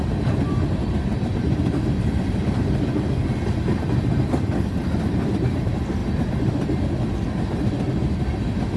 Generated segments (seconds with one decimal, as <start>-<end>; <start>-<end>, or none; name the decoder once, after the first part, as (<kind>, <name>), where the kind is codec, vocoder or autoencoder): none